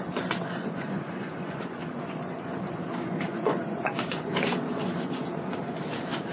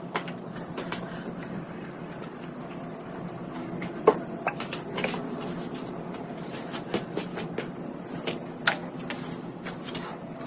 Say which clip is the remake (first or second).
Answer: first